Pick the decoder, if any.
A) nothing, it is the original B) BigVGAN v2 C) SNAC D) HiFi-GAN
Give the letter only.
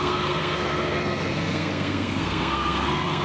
C